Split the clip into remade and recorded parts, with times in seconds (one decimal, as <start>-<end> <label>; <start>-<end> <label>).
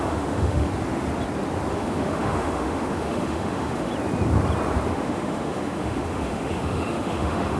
0.0-0.7 remade; 0.7-1.7 recorded; 1.7-3.9 remade; 3.9-4.9 recorded; 4.9-7.6 remade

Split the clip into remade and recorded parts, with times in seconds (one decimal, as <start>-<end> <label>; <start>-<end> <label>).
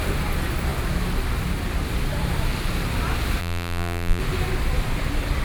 0.0-3.4 recorded; 3.4-4.2 remade; 4.2-5.4 recorded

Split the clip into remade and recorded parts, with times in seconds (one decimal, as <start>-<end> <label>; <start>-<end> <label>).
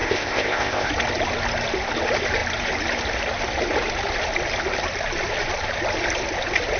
0.0-0.9 remade; 0.9-6.8 recorded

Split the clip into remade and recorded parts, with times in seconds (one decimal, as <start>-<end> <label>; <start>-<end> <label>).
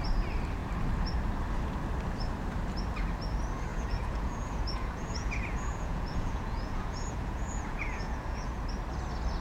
0.0-3.7 recorded; 3.7-8.6 remade; 8.6-9.4 recorded